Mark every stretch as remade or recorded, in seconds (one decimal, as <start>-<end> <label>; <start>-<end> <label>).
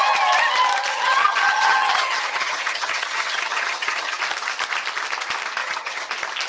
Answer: 0.0-0.9 recorded; 0.9-4.2 remade; 4.2-5.6 recorded; 5.6-6.1 remade; 6.1-6.5 recorded